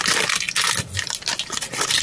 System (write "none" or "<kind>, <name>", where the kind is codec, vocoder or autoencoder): none